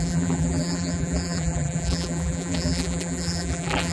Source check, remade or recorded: remade